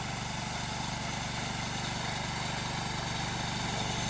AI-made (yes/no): no